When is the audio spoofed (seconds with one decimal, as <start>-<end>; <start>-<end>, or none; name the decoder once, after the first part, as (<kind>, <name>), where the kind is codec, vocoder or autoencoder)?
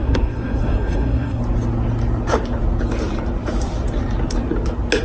0.0-1.4 (codec, SNAC)